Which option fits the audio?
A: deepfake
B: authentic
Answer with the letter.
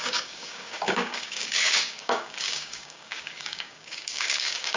A